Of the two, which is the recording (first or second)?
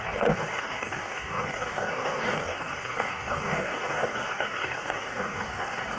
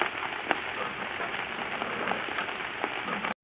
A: second